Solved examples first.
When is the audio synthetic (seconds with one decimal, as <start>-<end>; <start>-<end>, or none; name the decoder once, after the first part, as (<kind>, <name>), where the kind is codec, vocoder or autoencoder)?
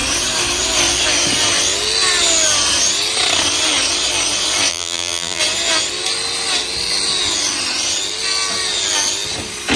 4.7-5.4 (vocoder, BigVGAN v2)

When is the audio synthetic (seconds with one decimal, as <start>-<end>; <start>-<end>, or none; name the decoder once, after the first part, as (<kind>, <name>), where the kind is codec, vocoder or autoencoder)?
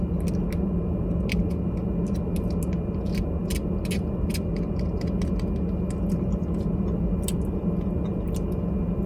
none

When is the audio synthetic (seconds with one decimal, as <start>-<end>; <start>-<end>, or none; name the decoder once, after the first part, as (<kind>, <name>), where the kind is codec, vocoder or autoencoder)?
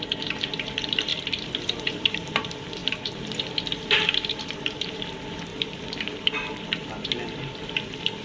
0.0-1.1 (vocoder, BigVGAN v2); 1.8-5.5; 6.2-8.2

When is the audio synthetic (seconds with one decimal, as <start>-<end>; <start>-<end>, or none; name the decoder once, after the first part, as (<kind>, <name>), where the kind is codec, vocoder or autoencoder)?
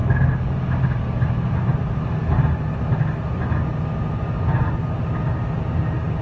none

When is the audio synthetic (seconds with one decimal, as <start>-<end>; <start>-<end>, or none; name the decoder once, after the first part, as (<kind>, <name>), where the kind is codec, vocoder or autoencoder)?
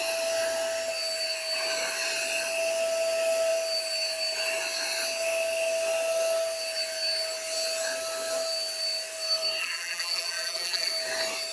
9.6-10.9 (vocoder, BigVGAN v2)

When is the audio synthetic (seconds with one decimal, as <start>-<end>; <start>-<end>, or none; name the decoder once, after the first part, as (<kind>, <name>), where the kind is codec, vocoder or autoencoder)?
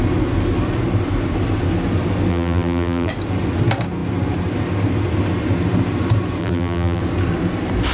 2.3-3.1 (vocoder, BigVGAN v2); 6.4-7.0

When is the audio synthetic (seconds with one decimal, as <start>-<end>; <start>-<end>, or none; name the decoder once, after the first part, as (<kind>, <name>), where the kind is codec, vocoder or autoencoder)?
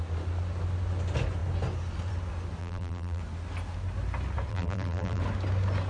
2.6-3.2 (vocoder, BigVGAN v2); 4.5-5.2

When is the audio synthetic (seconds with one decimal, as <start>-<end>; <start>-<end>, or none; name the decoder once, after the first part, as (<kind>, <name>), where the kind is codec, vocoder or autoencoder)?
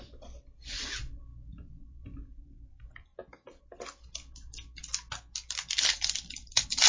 0.0-1.3 (vocoder, BigVGAN v2); 1.8-3.1; 3.6-4.8; 6.0-6.9